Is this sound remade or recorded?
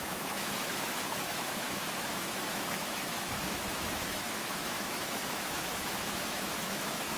remade